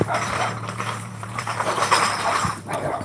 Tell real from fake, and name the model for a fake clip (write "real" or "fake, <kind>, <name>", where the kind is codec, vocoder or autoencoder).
fake, vocoder, BigVGAN v2